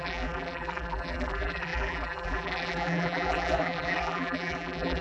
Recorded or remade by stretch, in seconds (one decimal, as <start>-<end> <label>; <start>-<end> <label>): 0.0-5.0 remade